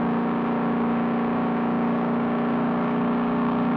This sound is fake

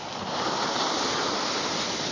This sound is real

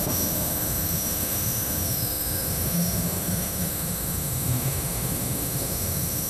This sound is fake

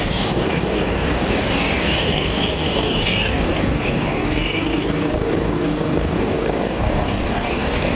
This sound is fake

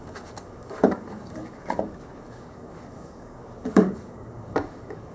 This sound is fake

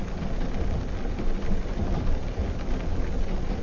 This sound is real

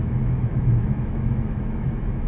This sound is fake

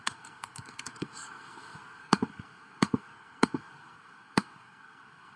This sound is fake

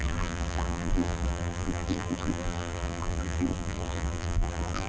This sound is fake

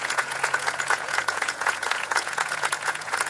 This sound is fake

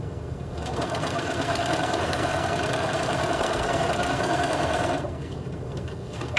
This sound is fake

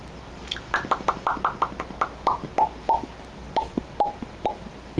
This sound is real